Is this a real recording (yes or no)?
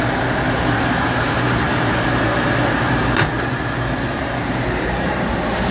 no